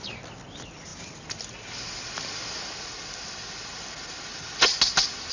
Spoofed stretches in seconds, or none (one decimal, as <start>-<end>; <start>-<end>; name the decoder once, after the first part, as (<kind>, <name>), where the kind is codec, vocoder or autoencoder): none